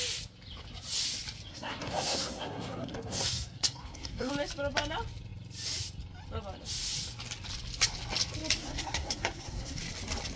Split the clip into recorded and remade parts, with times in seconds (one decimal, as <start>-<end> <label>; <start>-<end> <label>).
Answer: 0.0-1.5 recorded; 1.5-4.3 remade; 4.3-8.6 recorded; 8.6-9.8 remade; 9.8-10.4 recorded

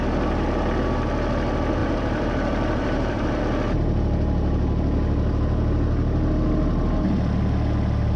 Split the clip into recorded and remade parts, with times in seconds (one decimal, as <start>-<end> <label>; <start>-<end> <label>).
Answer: 0.0-1.8 recorded; 1.8-3.4 remade; 3.4-8.2 recorded

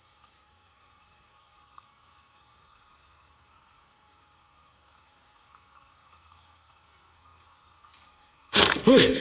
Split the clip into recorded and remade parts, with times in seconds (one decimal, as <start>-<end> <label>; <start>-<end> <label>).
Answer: 0.0-9.2 remade

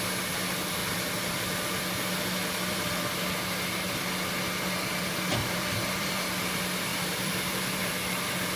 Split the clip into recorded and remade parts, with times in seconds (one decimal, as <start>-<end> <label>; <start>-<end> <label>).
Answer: 0.0-0.8 recorded; 0.8-1.8 remade; 1.8-2.4 recorded; 2.4-3.1 remade; 3.1-5.4 recorded; 5.4-6.2 remade; 6.2-6.9 recorded; 6.9-7.9 remade; 7.9-8.6 recorded

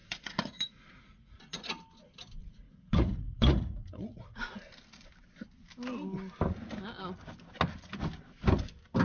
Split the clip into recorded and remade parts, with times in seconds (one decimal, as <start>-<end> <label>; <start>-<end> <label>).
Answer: 0.0-1.7 remade; 1.7-2.4 recorded; 2.4-4.5 remade; 4.5-9.0 recorded

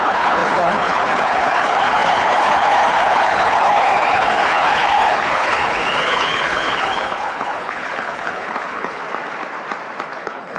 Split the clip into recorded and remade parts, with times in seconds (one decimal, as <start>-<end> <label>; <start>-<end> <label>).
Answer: 0.0-9.0 remade; 9.0-10.2 recorded; 10.2-10.6 remade

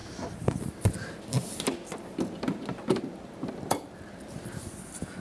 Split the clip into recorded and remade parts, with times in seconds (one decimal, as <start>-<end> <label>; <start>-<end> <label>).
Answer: 0.0-5.2 remade

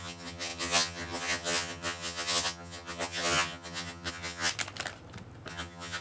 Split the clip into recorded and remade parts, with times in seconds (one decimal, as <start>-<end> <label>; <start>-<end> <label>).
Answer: 0.0-4.5 remade; 4.5-5.5 recorded; 5.5-6.0 remade